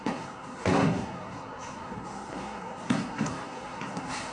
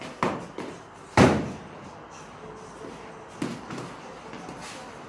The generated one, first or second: first